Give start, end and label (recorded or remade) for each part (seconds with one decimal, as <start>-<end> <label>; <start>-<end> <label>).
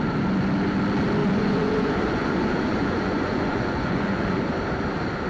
0.0-1.2 recorded; 1.2-4.4 remade; 4.4-5.3 recorded